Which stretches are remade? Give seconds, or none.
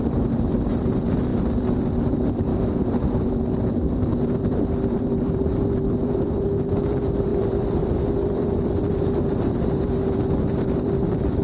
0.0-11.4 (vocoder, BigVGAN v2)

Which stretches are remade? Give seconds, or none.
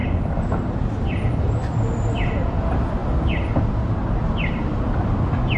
0.0-1.7 (vocoder, BigVGAN v2)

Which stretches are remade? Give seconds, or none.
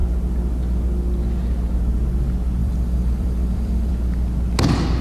2.6-3.9 (vocoder, BigVGAN v2)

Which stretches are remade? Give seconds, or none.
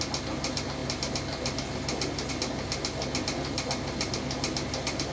none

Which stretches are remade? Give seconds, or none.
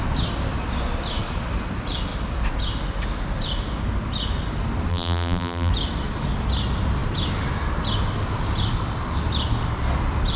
4.9-5.7 (vocoder, BigVGAN v2)